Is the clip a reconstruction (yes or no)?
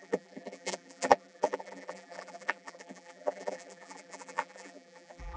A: yes